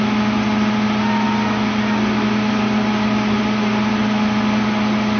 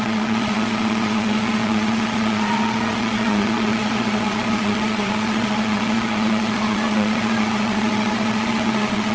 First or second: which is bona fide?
first